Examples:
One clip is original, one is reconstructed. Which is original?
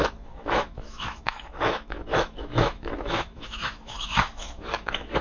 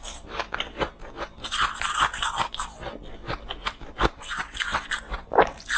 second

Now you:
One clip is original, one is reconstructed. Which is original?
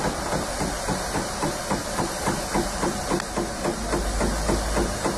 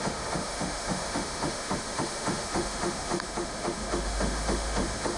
first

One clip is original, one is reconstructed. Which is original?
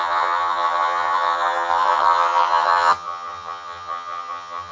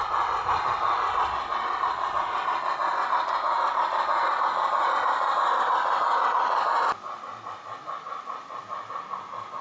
second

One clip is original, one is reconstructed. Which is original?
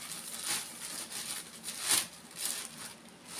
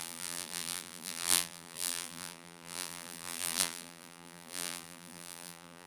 first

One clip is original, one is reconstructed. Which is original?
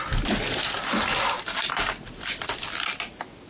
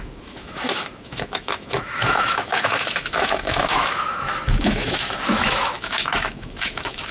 first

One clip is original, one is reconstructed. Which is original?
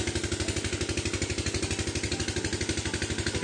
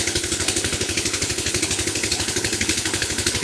first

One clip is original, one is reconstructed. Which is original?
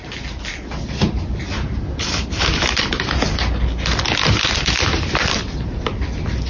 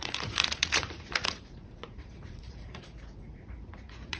first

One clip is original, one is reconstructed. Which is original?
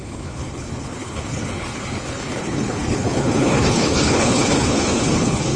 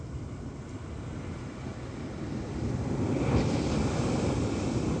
second